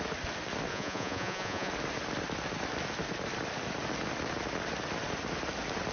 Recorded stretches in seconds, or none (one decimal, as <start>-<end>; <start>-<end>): 0.0-0.7; 1.7-5.9

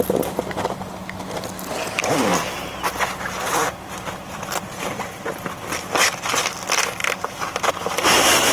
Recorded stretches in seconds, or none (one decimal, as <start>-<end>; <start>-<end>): 0.0-8.5

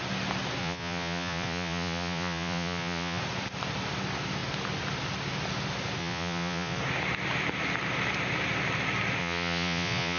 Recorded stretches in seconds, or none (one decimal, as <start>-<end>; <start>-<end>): 0.0-0.6; 3.2-6.0; 6.8-9.2

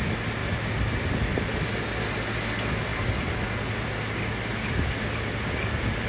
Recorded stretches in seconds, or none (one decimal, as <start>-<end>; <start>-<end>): 0.0-6.1

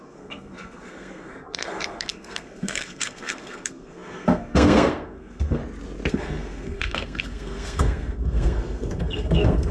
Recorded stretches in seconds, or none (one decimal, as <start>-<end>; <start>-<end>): 5.6-6.1

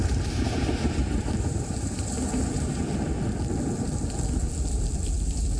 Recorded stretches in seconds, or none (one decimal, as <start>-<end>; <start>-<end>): 2.8-5.6

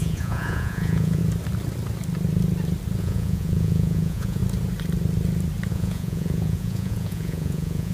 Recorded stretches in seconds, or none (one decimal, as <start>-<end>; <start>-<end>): 1.2-3.0; 4.4-5.7